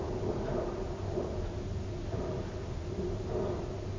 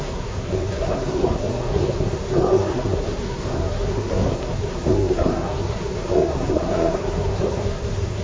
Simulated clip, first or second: second